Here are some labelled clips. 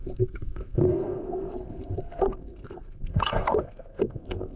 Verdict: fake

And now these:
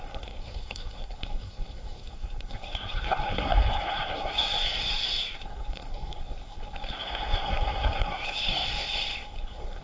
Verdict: fake